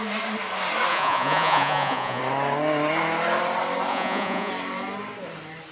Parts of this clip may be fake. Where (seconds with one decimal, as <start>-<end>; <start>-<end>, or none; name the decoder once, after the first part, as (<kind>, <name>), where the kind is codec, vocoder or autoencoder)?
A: 0.9-2.2 (vocoder, Vocos); 3.9-4.5